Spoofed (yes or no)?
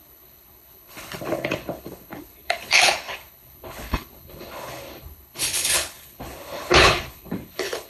yes